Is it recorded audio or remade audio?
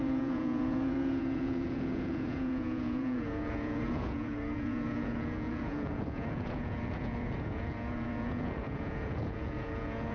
remade